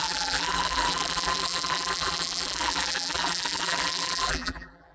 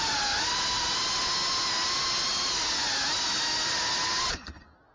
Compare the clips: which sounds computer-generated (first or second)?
first